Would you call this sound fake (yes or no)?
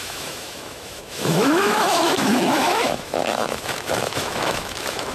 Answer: yes